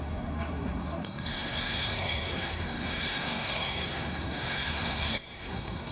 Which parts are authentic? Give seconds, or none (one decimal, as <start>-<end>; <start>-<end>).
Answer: none